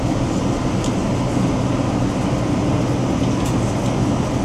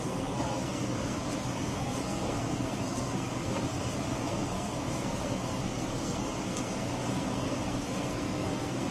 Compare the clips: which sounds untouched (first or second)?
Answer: first